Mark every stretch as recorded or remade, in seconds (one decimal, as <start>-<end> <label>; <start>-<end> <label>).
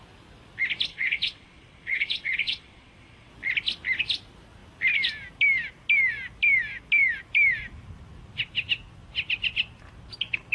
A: 0.0-0.9 recorded; 0.9-3.3 remade; 3.3-10.5 recorded